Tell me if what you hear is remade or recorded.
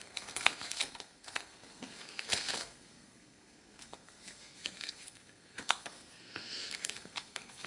remade